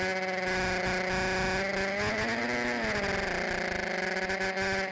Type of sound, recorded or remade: recorded